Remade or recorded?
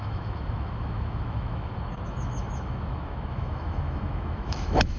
remade